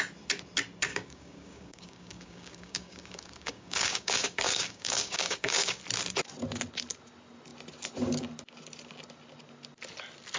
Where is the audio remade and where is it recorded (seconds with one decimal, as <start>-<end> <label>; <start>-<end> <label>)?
0.0-0.9 recorded; 0.9-5.8 remade; 5.8-10.4 recorded

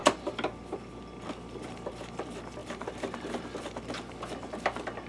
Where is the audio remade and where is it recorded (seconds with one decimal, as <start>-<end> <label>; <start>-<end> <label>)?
0.0-2.6 recorded; 2.6-3.5 remade; 3.5-5.1 recorded

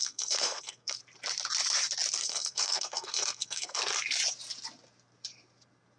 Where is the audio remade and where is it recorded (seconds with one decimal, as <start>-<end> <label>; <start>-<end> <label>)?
0.0-1.0 remade; 1.0-2.2 recorded; 2.2-3.8 remade; 3.8-6.0 recorded

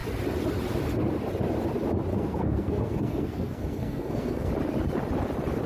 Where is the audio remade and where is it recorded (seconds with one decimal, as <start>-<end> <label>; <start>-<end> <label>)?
0.0-2.1 recorded; 2.1-4.5 remade; 4.5-5.7 recorded

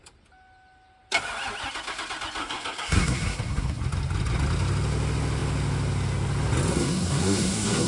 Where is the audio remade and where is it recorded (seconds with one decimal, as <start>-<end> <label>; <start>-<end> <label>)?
0.0-2.4 recorded; 2.4-3.8 remade; 3.8-6.7 recorded; 6.7-7.9 remade